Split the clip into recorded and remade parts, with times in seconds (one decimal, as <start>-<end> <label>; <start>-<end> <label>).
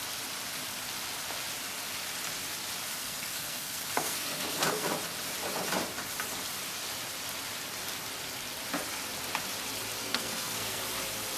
0.0-3.0 recorded; 3.0-4.9 remade; 4.9-10.0 recorded; 10.0-10.8 remade; 10.8-11.4 recorded